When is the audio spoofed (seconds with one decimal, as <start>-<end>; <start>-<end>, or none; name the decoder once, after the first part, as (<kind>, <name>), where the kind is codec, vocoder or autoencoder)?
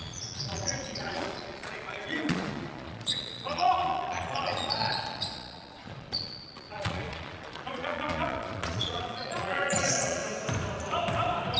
0.0-10.2 (vocoder, Vocos)